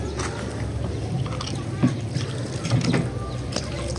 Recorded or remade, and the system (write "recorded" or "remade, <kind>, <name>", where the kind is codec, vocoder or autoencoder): recorded